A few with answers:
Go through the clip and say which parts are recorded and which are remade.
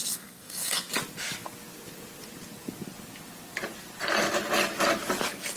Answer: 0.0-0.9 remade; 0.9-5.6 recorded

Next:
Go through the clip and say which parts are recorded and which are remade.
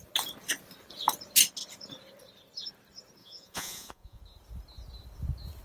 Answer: 0.0-3.2 recorded; 3.2-4.2 remade; 4.2-5.6 recorded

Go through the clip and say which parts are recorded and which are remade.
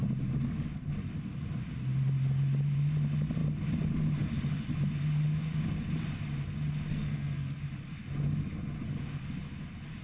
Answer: 0.0-6.9 recorded; 6.9-7.6 remade; 7.6-10.0 recorded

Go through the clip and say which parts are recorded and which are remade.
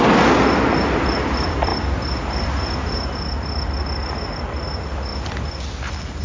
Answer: 0.0-6.2 recorded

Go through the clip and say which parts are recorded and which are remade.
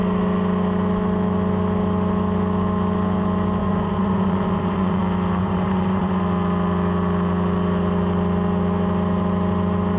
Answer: 0.0-3.6 recorded; 3.6-5.0 remade; 5.0-5.4 recorded; 5.4-6.2 remade; 6.2-10.0 recorded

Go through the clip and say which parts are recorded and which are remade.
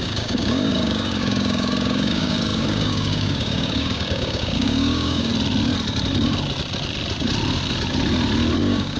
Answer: 0.0-5.3 remade; 5.3-8.6 recorded; 8.6-9.0 remade